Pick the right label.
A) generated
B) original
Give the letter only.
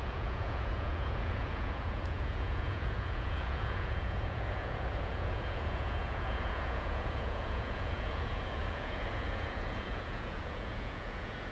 A